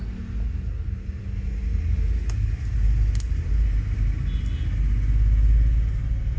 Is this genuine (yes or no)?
yes